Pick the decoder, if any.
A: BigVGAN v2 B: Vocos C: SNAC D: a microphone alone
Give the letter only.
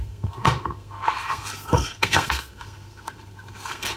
C